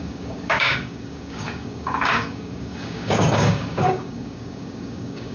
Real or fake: fake